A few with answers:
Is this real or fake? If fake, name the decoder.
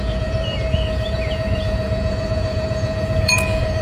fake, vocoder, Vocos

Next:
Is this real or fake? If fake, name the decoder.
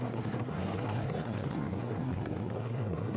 fake, codec, SNAC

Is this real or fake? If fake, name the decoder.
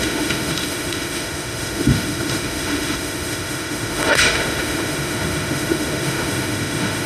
fake, autoencoder, DAC-VAE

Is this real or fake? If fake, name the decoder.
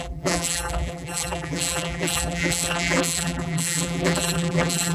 fake, vocoder, BigVGAN v2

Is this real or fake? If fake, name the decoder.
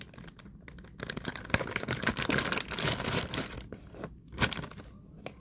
real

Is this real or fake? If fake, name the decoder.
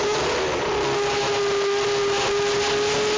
real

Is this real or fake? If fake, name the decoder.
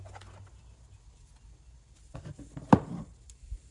real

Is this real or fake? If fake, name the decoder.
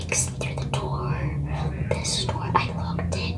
real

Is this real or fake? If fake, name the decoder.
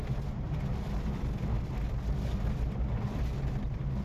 real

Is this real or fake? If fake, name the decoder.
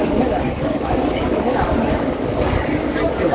fake, codec, DAC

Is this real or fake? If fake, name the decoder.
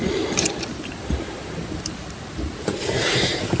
real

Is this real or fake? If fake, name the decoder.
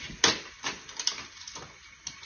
real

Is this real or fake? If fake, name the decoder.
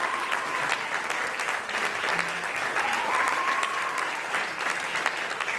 real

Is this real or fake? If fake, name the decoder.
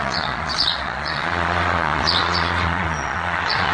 fake, vocoder, Vocos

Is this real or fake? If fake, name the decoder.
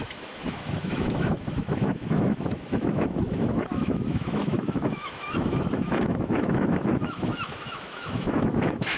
fake, autoencoder, DAC-VAE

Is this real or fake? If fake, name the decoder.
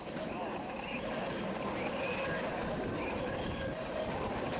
real